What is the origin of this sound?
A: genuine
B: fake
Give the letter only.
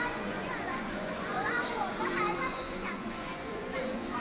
B